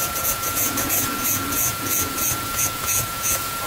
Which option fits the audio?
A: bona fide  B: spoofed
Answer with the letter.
B